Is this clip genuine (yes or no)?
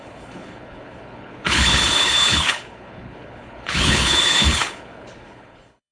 no